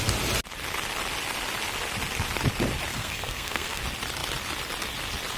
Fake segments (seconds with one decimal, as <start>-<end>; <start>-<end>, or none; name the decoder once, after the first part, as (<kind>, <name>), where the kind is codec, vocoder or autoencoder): 2.9-3.8 (codec, SNAC)